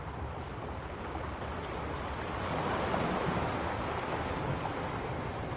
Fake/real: real